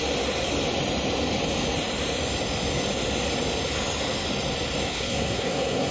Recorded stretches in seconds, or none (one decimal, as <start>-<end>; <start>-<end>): 0.0-4.9